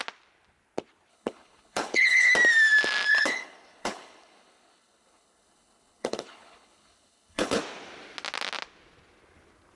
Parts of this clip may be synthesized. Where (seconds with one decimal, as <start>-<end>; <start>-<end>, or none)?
1.1-2.3; 3.1-7.6